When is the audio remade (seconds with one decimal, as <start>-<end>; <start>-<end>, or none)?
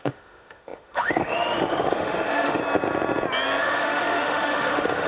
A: 0.0-2.6; 3.6-5.1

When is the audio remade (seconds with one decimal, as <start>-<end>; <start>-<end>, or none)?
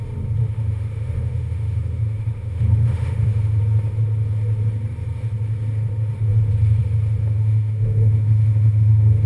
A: 0.4-3.6; 7.2-9.3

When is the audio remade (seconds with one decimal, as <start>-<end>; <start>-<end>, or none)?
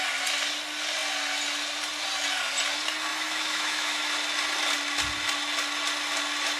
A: 3.1-4.0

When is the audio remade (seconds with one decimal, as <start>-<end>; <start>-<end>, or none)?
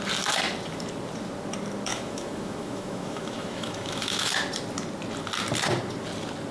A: 1.9-4.3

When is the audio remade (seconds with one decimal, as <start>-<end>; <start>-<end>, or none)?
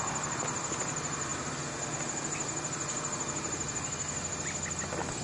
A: none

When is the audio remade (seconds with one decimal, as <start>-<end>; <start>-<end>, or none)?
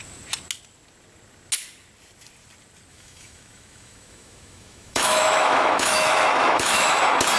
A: 2.9-7.0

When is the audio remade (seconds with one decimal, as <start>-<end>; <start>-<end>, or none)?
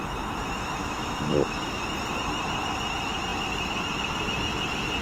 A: 0.8-1.8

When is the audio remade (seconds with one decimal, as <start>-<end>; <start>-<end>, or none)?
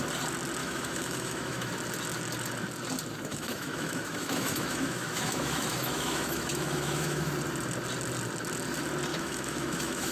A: 0.6-1.7; 3.3-7.3; 9.1-10.1